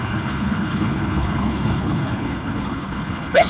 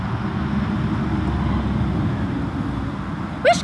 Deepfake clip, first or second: first